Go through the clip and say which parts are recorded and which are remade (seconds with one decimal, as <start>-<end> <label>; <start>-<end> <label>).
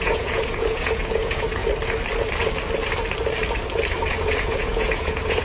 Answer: 0.0-1.6 remade; 1.6-4.1 recorded; 4.1-5.4 remade